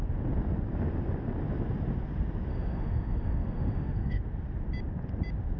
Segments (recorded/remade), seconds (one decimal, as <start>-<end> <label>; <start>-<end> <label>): 0.0-2.5 recorded; 2.5-4.2 remade; 4.2-5.6 recorded